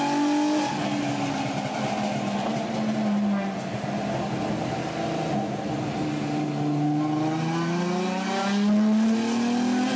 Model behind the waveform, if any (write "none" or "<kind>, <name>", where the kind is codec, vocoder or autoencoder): none